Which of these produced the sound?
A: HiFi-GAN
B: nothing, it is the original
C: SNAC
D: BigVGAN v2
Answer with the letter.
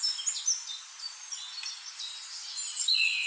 B